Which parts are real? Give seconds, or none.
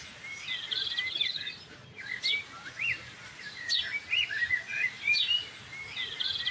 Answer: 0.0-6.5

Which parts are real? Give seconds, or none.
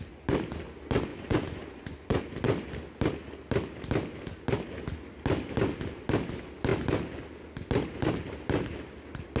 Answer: 0.0-1.1; 2.2-9.4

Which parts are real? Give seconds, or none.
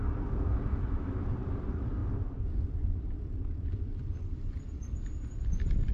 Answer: 0.0-2.0; 5.5-5.9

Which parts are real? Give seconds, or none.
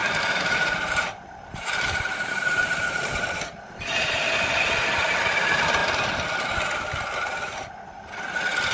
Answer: 4.2-8.7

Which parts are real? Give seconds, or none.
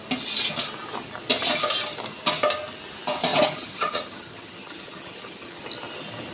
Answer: 0.0-3.3; 5.6-6.3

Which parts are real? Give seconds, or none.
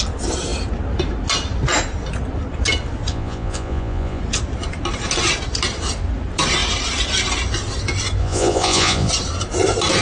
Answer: 0.0-3.1; 4.2-8.2; 9.1-10.0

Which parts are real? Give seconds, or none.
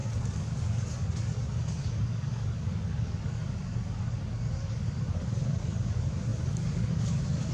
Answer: none